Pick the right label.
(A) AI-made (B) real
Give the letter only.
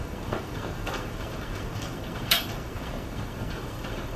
A